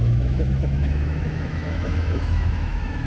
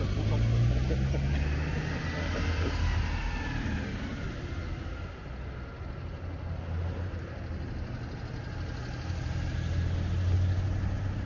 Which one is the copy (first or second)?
first